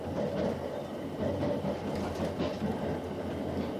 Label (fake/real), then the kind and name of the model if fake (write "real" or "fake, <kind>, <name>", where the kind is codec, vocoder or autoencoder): real